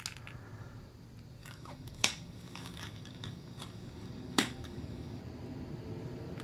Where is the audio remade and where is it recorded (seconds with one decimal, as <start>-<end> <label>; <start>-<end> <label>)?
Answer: 0.0-1.4 recorded; 1.4-5.2 remade; 5.2-6.4 recorded